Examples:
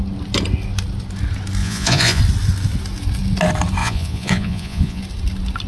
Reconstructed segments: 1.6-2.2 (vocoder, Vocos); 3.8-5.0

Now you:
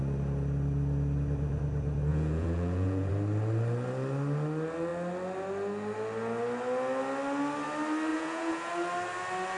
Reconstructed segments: 2.1-3.1 (vocoder, Vocos); 8.1-8.7

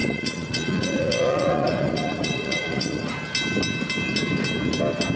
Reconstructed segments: 0.0-3.1 (vocoder, Vocos)